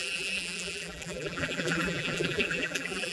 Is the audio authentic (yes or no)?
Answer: no